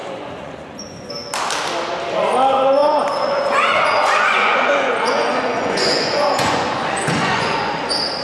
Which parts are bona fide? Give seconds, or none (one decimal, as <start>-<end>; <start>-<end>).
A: 1.1-2.8; 7.7-8.2